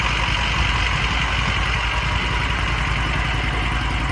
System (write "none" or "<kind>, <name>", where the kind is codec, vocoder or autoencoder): none